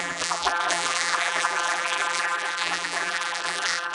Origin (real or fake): fake